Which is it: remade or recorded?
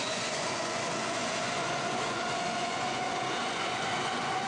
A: remade